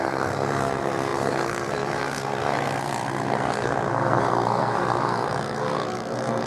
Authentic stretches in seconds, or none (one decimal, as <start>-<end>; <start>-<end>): none